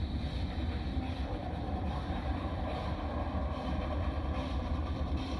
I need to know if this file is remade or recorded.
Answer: remade